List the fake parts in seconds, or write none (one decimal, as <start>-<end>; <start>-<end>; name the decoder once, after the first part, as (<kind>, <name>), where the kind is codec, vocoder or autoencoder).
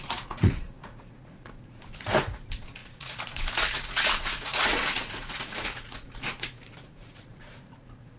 0.0-8.2 (vocoder, Vocos)